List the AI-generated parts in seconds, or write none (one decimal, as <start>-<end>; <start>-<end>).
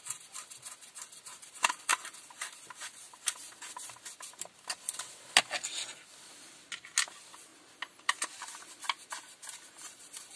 none